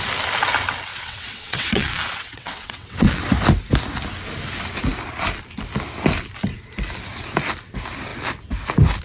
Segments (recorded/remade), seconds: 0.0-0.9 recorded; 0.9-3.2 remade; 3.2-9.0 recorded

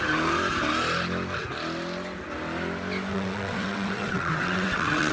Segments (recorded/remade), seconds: 0.0-3.1 recorded; 3.1-5.1 remade

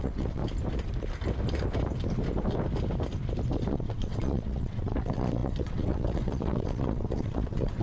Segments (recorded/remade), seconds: 0.0-0.4 remade; 0.4-3.7 recorded; 3.7-7.8 remade